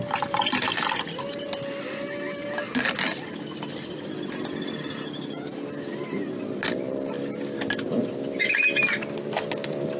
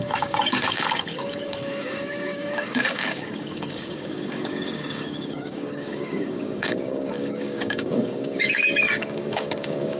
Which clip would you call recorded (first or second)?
first